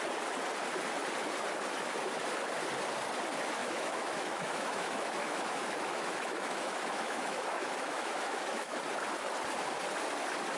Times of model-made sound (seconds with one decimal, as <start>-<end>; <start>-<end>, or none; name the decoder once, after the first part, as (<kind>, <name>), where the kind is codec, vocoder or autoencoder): 3.6-8.8 (autoencoder, DAC-VAE)